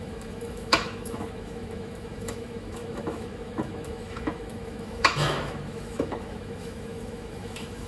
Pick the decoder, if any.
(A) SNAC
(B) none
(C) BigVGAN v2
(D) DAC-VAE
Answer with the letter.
D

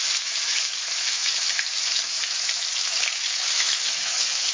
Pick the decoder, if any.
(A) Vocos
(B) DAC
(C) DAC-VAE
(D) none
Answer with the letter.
C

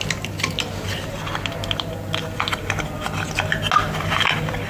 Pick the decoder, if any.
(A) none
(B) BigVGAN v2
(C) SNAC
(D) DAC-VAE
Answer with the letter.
A